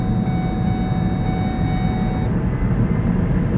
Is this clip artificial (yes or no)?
no